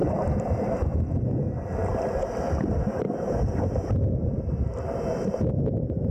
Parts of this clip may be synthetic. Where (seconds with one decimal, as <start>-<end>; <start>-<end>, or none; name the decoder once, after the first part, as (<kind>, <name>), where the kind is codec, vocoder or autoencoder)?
none